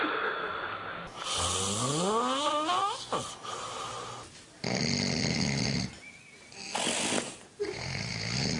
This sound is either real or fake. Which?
real